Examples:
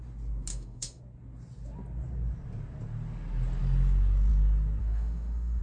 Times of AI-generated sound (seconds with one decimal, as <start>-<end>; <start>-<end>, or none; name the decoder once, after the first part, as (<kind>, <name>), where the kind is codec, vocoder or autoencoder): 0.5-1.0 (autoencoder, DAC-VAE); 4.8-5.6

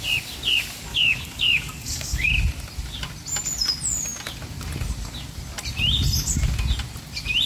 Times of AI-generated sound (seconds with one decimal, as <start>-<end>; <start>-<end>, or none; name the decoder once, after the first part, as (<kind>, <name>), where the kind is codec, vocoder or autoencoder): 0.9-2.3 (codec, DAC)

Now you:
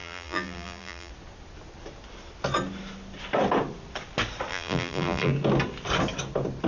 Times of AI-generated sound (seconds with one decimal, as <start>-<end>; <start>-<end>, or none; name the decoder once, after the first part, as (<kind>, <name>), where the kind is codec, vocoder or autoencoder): 0.0-1.1 (vocoder, BigVGAN v2); 4.5-5.3

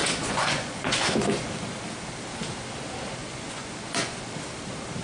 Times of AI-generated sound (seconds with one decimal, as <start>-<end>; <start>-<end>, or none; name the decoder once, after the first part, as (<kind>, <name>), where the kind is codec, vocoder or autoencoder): 0.0-1.1 (vocoder, Vocos); 3.2-4.3

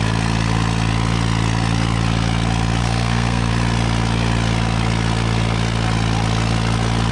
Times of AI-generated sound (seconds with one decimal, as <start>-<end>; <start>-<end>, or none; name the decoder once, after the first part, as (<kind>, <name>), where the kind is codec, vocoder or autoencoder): 2.8-3.5 (codec, SNAC)

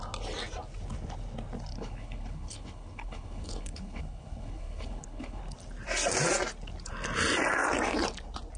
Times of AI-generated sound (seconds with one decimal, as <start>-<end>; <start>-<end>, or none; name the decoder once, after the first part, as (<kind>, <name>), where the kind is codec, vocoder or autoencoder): 1.7-5.4 (codec, HILCodec)

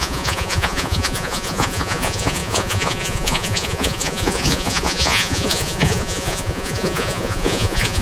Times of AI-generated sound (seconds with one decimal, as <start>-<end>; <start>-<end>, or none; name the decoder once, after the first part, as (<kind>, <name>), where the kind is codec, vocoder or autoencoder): 0.0-8.0 (vocoder, Vocos)